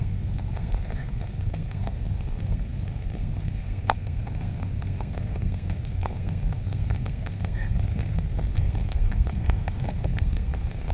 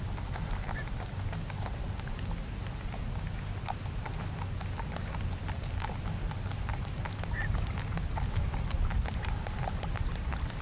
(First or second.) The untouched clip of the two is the second